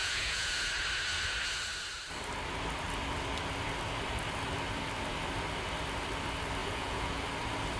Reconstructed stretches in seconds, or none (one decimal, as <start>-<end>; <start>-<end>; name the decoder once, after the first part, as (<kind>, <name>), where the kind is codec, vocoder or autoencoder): 0.0-0.7 (vocoder, Vocos); 6.6-7.2

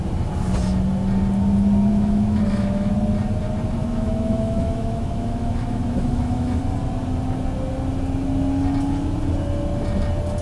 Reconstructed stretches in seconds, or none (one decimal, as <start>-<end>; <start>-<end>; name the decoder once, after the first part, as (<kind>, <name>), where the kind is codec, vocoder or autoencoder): 1.9-2.9 (autoencoder, DAC-VAE); 3.8-6.6